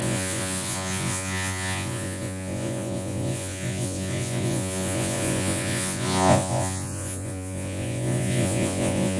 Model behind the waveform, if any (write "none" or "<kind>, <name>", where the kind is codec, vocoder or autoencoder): vocoder, Vocos